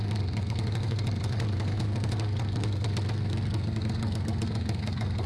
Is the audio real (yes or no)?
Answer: no